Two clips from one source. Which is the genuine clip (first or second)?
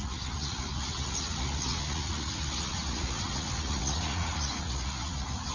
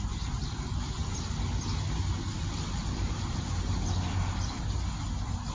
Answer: second